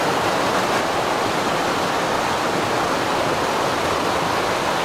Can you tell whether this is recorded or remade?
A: recorded